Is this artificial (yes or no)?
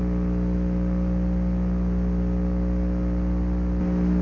no